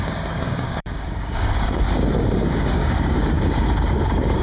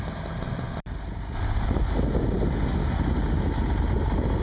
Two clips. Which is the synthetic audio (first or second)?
first